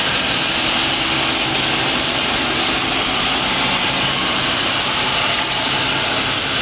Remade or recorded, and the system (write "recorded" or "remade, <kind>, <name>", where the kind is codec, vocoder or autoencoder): recorded